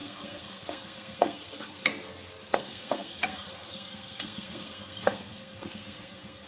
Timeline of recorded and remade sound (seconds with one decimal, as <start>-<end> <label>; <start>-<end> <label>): 0.0-1.9 remade; 1.9-2.5 recorded; 2.5-6.5 remade